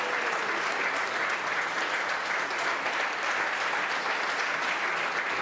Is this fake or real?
real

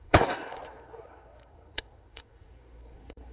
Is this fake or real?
fake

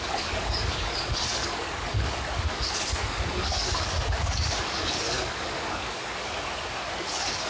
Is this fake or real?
fake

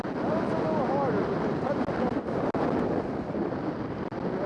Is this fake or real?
real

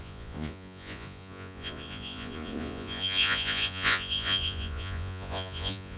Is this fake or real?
fake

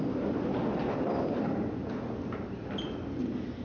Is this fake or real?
real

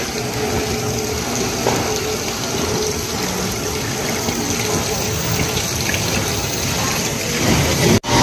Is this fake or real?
real